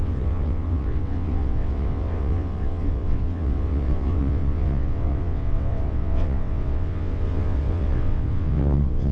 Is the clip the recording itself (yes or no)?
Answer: no